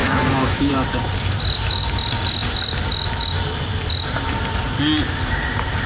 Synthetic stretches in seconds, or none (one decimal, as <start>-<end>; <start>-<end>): 0.0-0.7